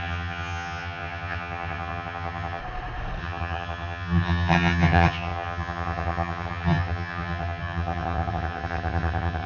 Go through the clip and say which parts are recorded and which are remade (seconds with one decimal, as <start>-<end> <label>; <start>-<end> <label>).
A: 0.0-2.6 remade; 2.6-3.2 recorded; 3.2-9.5 remade